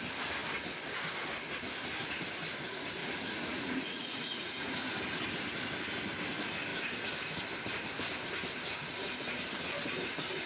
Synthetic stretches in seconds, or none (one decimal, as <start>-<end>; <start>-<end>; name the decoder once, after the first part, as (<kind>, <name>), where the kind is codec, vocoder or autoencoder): 3.0-4.7 (vocoder, Vocos)